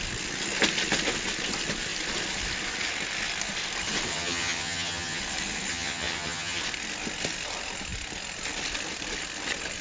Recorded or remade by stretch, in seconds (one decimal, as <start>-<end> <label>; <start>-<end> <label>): 0.0-4.1 recorded; 4.1-5.2 remade; 5.2-5.7 recorded; 5.7-6.6 remade; 6.6-9.8 recorded